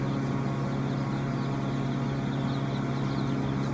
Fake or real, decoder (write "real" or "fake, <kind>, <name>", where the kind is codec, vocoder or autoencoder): real